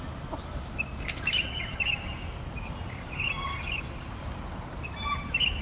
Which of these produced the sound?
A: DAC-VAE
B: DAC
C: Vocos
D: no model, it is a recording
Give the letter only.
D